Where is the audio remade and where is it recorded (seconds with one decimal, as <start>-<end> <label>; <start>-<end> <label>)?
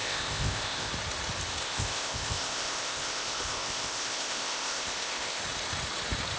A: 0.0-0.9 remade; 0.9-1.6 recorded; 1.6-5.4 remade; 5.4-6.4 recorded